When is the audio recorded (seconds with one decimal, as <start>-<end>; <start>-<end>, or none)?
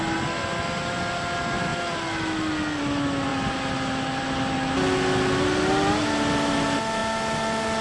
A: 0.0-7.8